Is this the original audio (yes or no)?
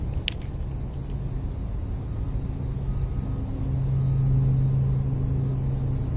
yes